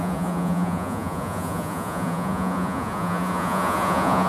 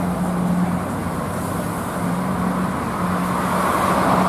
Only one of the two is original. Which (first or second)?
second